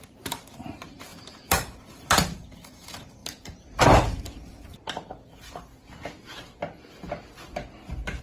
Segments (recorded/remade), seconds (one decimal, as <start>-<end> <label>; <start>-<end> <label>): 0.0-5.7 remade; 5.7-8.2 recorded